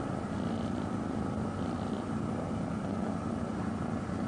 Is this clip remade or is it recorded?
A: recorded